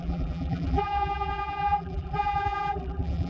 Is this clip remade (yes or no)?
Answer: yes